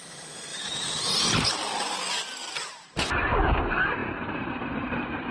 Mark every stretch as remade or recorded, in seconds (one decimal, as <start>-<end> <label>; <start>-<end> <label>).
0.0-0.5 recorded; 0.5-1.1 remade; 1.1-2.4 recorded; 2.4-3.2 remade; 3.2-4.0 recorded; 4.0-5.3 remade